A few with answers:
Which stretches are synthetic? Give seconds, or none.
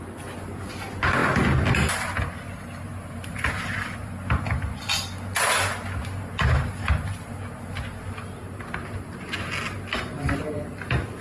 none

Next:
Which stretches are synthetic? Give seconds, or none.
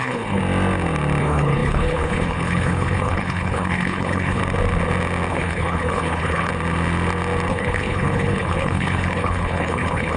0.0-0.4 (codec, HILCodec); 1.2-4.4; 5.3-6.5; 7.5-10.2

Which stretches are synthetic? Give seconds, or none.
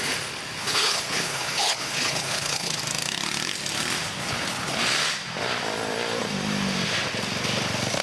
0.6-2.8 (codec, HILCodec); 4.2-4.8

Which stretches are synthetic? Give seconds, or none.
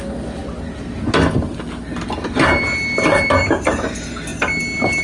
none